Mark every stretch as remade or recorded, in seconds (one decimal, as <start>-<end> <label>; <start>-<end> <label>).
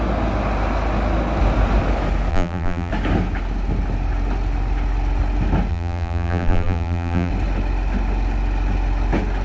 0.0-2.3 recorded; 2.3-2.9 remade; 2.9-5.7 recorded; 5.7-7.3 remade; 7.3-9.4 recorded